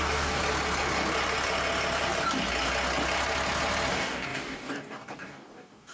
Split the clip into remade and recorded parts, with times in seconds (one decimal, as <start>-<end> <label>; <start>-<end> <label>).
0.0-0.4 remade; 0.4-3.9 recorded; 3.9-5.9 remade